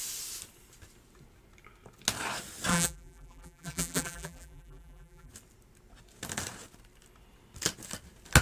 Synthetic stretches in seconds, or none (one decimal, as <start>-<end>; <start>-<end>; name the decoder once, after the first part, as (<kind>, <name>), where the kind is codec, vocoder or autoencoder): 2.7-5.3 (vocoder, BigVGAN v2)